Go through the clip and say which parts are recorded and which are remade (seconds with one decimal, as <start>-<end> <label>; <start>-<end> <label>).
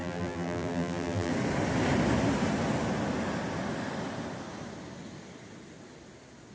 0.0-1.3 remade; 1.3-6.5 recorded